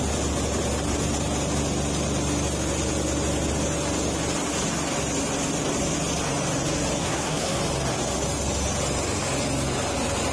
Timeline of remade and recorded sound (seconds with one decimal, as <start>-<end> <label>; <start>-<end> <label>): 0.0-7.0 recorded; 7.0-7.6 remade; 7.6-10.3 recorded